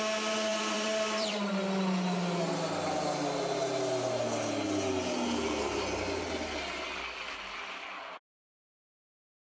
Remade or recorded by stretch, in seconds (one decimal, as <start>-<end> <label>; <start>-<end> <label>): 0.0-0.5 recorded; 0.5-1.5 remade; 1.5-9.4 recorded